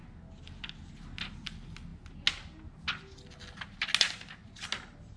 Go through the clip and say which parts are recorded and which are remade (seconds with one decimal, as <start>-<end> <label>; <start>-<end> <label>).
0.0-5.2 recorded